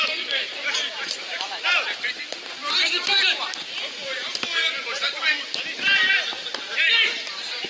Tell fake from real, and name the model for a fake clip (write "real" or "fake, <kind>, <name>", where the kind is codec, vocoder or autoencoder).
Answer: fake, vocoder, BigVGAN v2